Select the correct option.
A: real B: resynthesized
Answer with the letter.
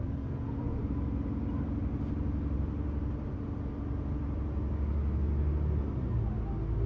A